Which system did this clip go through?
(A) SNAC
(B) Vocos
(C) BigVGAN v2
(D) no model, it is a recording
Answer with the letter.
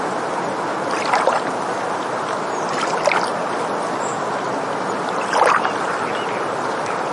D